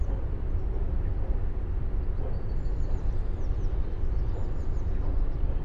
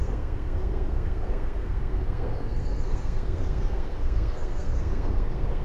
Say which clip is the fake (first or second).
second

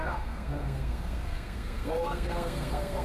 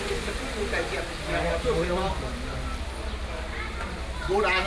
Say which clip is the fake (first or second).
first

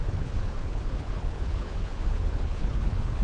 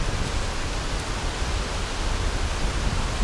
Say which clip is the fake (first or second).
first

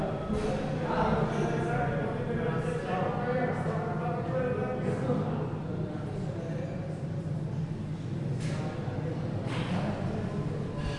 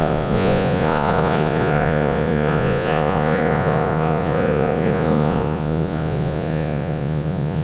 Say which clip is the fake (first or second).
second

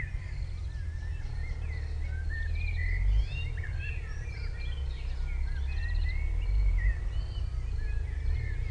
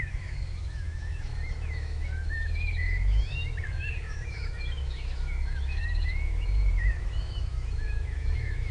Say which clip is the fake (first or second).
second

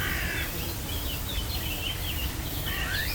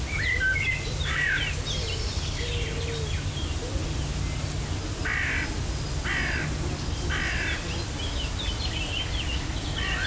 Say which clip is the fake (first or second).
first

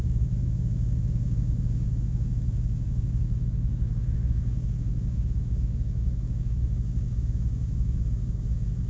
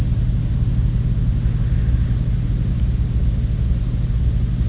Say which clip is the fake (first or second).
first